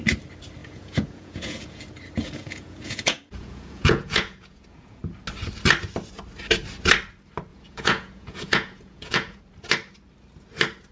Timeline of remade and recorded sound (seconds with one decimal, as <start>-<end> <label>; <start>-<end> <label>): 0.0-0.6 recorded; 0.6-1.8 remade; 1.8-2.2 recorded; 2.2-5.0 remade; 5.0-7.5 recorded; 7.5-9.4 remade; 9.4-10.9 recorded